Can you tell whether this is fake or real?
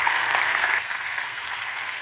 fake